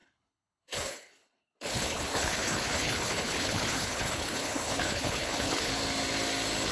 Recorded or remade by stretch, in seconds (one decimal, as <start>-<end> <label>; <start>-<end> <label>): 0.0-5.7 remade; 5.7-6.7 recorded